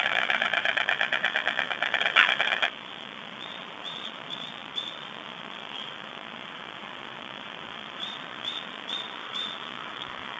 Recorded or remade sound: remade